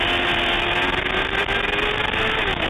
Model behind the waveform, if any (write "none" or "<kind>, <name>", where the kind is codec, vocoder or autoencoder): none